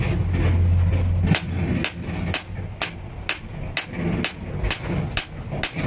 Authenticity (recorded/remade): recorded